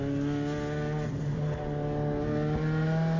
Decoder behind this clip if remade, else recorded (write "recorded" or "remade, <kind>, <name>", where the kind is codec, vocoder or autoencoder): recorded